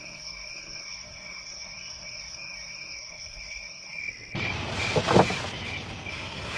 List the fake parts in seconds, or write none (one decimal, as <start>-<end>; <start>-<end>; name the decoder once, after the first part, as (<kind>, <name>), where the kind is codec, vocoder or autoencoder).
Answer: 0.0-4.0 (codec, SNAC); 6.1-6.6